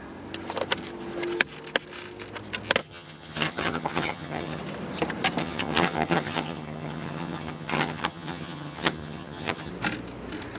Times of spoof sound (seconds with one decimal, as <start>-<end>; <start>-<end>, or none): 2.8-4.6; 5.4-9.7